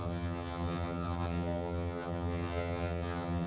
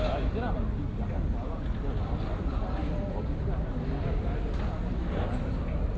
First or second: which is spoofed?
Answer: first